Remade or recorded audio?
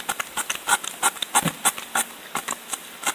recorded